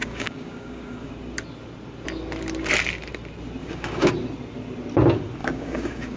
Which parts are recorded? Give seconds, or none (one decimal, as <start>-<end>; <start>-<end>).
1.1-3.6; 4.1-5.4